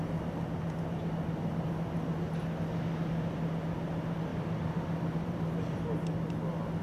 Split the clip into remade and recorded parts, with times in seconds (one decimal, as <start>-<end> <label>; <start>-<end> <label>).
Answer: 0.0-4.3 recorded; 4.3-5.8 remade; 5.8-6.8 recorded